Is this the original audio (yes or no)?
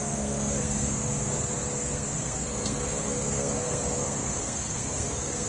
no